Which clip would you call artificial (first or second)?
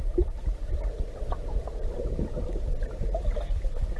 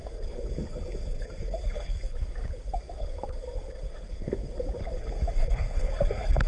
second